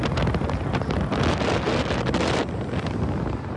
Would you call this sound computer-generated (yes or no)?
no